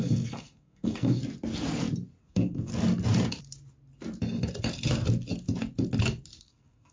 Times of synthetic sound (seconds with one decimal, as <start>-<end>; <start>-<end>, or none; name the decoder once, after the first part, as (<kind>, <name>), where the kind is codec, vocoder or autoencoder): 0.0-1.2 (codec, SNAC); 2.2-2.7; 6.4-6.9